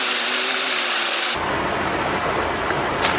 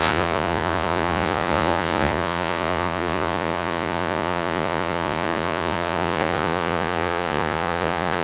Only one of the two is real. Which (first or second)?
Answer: first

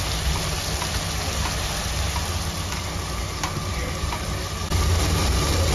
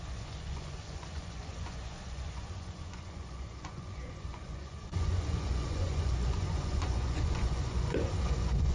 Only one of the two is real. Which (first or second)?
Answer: first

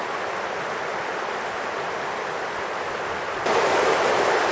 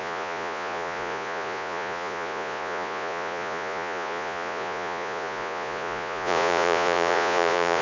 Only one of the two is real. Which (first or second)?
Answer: first